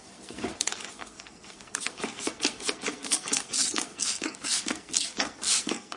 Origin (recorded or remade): remade